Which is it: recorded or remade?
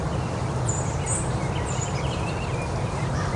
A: recorded